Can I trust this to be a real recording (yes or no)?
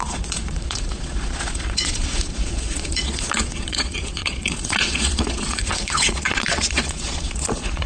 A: no